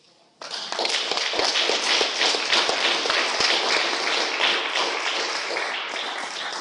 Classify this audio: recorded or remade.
recorded